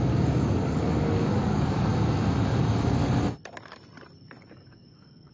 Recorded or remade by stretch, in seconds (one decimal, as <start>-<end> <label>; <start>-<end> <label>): 0.0-1.9 remade; 1.9-2.6 recorded; 2.6-3.0 remade; 3.0-4.5 recorded; 4.5-5.3 remade